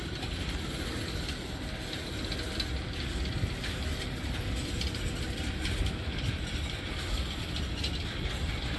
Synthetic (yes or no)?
no